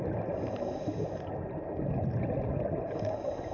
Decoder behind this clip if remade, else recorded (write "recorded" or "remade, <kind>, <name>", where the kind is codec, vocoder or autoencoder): recorded